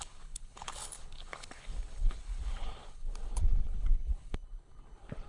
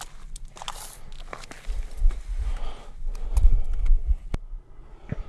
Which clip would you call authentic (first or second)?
second